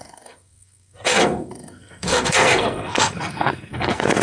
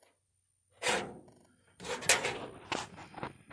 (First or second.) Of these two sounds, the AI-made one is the first